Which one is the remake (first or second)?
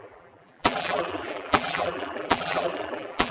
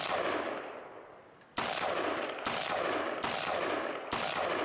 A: first